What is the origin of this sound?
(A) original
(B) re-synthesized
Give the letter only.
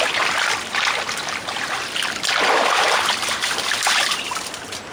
A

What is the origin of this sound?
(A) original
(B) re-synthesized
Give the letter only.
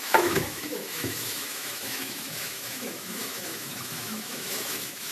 B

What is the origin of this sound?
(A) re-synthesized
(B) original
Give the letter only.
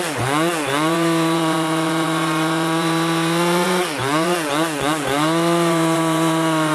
A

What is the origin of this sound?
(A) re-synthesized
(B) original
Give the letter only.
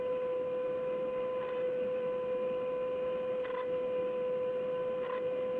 A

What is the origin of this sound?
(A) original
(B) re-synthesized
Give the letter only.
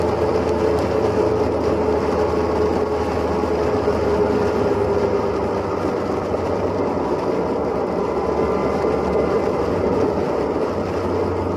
A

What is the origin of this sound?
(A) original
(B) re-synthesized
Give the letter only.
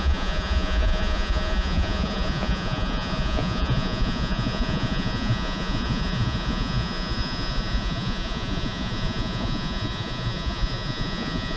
B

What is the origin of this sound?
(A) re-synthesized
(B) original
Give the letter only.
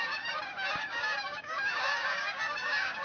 A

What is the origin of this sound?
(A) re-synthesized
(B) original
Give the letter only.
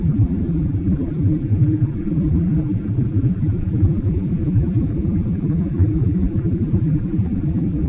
A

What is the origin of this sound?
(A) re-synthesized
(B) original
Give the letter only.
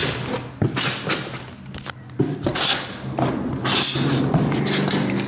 B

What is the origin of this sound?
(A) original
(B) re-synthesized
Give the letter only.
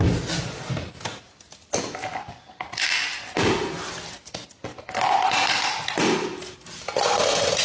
A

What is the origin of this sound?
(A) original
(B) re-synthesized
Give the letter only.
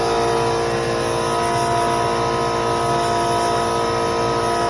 A